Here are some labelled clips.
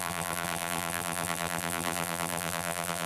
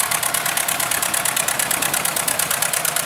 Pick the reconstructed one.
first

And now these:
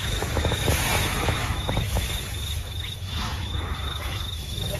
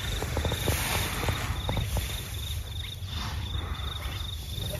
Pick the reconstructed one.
first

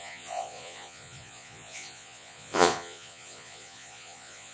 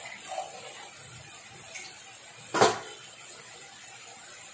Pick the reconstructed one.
first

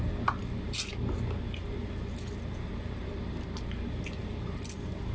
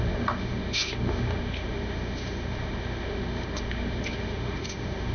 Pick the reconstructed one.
second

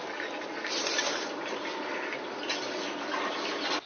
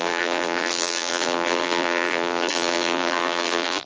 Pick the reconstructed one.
second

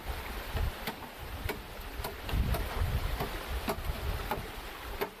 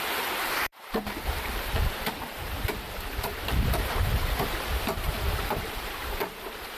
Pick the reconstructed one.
second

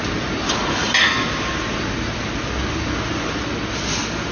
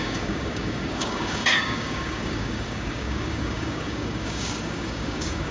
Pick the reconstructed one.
second